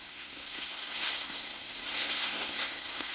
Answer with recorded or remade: remade